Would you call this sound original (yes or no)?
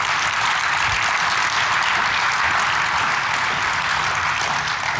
yes